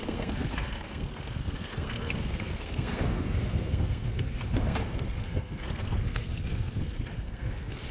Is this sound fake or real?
fake